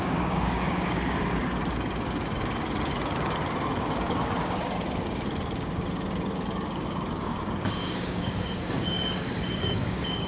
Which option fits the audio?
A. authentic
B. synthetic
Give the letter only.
B